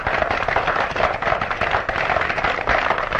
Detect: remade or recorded recorded